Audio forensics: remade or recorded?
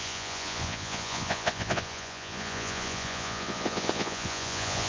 remade